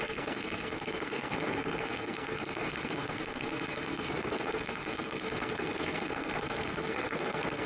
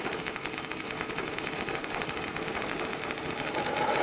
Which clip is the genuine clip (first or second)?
second